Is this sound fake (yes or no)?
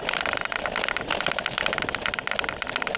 no